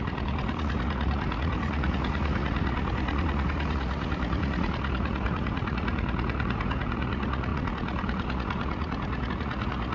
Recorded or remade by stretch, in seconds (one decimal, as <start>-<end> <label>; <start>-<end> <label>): 0.0-9.9 remade